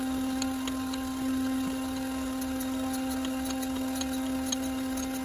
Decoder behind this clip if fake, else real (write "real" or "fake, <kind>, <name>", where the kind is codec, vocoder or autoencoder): real